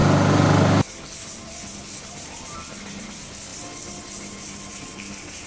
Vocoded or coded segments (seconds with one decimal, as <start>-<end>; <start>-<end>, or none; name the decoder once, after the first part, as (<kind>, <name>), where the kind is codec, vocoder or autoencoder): none